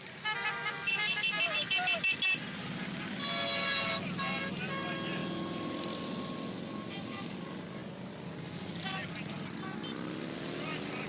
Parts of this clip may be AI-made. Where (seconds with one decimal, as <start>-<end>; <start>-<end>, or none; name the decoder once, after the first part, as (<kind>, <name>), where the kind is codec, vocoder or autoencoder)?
none